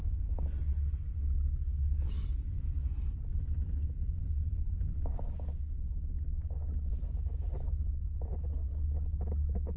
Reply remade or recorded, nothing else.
recorded